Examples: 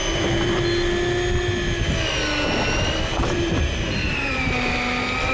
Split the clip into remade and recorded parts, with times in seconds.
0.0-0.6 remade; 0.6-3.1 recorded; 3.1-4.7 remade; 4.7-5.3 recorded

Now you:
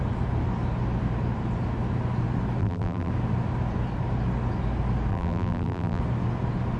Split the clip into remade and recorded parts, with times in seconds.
0.0-2.6 recorded; 2.6-3.1 remade; 3.1-5.1 recorded; 5.1-6.0 remade; 6.0-6.8 recorded

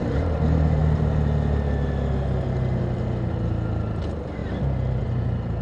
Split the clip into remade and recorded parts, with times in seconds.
0.0-0.8 remade; 0.8-4.0 recorded; 4.0-4.4 remade; 4.4-5.0 recorded; 5.0-5.6 remade